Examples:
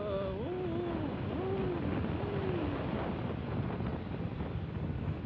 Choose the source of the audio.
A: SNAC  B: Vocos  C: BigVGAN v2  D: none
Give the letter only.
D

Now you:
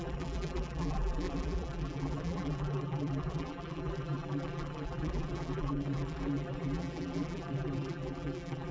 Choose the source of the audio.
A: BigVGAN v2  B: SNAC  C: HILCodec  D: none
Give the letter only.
A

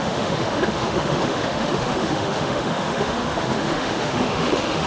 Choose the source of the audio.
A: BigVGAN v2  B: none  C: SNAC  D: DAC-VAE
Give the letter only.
D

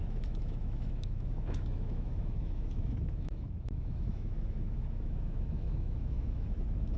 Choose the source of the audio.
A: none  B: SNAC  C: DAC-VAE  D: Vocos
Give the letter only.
C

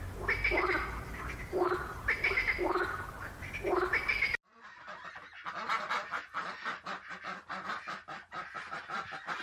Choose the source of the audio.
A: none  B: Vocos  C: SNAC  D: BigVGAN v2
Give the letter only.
A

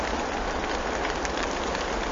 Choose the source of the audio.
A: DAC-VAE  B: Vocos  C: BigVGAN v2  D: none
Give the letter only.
D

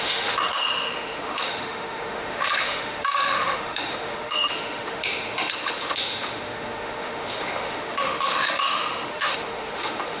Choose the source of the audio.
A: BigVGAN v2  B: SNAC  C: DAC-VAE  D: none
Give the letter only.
C